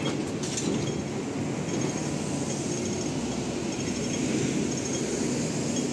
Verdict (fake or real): real